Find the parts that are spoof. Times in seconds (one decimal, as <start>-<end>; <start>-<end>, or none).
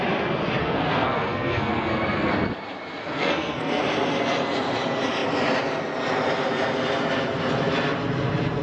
0.6-2.3; 3.0-3.8